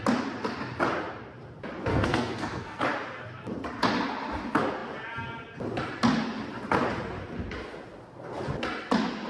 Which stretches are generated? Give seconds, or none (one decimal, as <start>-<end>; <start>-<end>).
1.9-2.8